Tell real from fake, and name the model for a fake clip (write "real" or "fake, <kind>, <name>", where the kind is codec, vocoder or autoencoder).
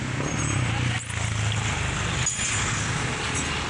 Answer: real